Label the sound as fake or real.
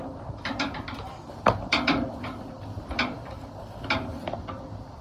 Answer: real